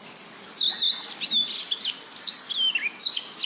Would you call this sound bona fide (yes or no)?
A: yes